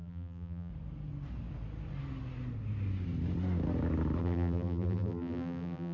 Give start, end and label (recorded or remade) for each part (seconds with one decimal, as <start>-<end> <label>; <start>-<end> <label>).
0.0-0.7 remade; 0.7-4.2 recorded; 4.2-5.9 remade